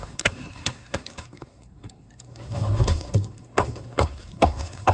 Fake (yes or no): yes